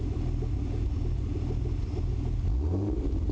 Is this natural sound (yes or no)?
yes